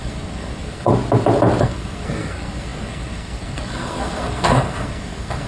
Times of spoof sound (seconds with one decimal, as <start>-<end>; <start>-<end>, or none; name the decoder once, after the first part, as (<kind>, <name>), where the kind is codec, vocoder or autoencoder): 0.0-0.9 (codec, SNAC); 1.6-5.5